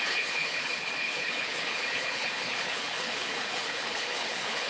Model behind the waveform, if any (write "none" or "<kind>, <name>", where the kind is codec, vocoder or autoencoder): codec, HILCodec